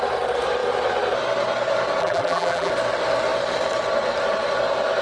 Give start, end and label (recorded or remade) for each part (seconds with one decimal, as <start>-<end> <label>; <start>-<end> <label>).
0.0-2.0 recorded; 2.0-2.7 remade; 2.7-5.0 recorded